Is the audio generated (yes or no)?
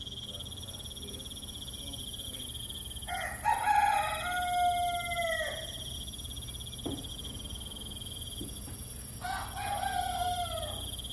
no